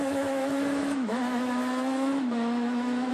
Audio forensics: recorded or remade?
remade